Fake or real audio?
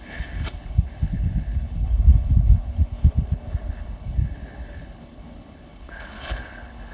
fake